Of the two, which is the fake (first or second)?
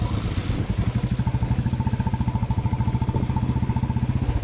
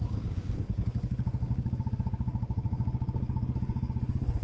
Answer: second